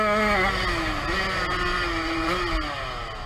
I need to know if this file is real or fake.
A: real